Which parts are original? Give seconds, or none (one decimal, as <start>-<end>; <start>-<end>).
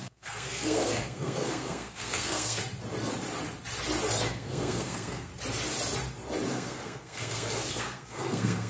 2.6-4.3; 5.3-6.5